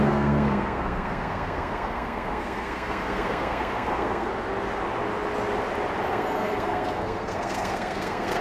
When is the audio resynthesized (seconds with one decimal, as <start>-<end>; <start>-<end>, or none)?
0.0-4.3; 6.1-8.4